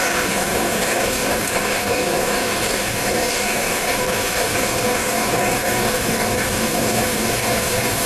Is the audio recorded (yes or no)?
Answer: no